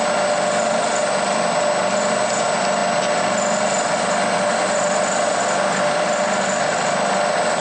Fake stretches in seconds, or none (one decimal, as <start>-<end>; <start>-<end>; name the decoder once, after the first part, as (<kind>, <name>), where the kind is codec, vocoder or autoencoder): none